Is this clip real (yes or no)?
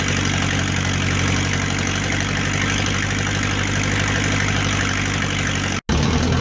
yes